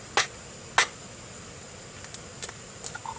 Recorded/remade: recorded